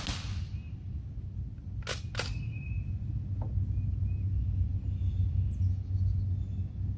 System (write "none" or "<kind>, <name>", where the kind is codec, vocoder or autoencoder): none